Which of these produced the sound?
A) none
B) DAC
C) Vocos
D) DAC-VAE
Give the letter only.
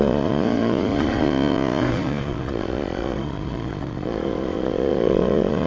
C